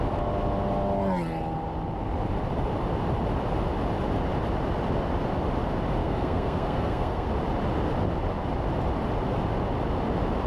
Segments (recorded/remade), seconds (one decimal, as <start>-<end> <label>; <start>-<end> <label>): 0.0-6.0 recorded; 6.0-7.3 remade; 7.3-10.5 recorded